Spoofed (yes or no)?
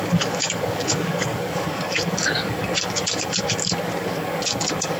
yes